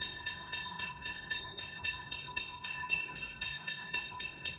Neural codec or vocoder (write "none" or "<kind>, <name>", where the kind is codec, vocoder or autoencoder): codec, SNAC